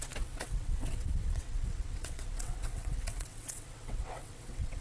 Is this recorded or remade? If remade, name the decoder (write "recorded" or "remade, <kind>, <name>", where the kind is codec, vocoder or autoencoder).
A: remade, vocoder, WaveNeXt